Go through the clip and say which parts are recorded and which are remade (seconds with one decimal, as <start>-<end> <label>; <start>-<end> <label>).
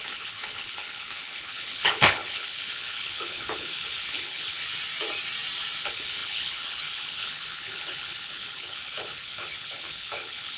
0.0-4.6 remade; 4.6-5.8 recorded; 5.8-10.6 remade